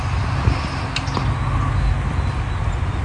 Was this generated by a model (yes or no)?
no